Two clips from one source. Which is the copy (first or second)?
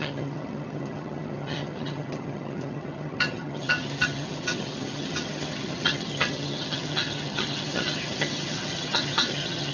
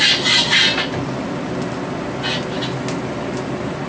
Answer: first